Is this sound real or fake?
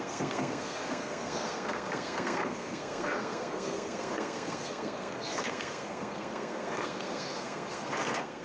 fake